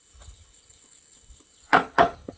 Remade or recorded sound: remade